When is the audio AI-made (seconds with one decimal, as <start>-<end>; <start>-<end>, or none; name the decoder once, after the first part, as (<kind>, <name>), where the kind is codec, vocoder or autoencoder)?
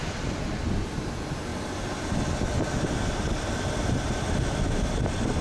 none